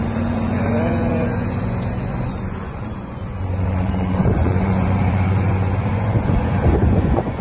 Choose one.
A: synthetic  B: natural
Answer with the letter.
A